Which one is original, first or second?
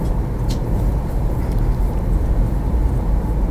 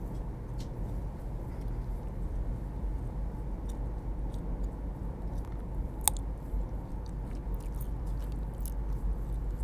second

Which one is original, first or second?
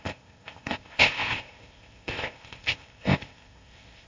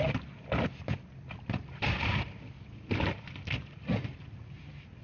second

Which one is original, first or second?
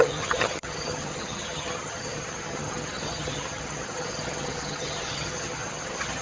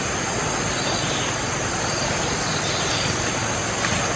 second